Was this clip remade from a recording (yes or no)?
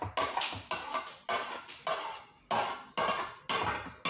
no